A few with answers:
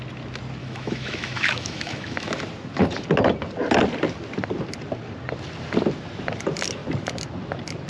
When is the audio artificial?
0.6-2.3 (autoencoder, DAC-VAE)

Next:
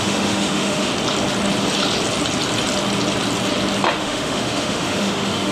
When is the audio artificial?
0.0-0.9 (autoencoder, DAC-VAE); 3.9-5.5

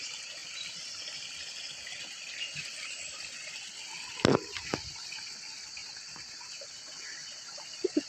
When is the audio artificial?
none